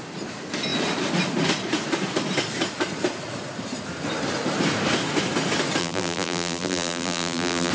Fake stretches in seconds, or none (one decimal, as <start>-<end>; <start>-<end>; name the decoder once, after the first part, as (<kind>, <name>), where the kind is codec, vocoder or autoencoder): 5.8-7.7 (vocoder, BigVGAN v2)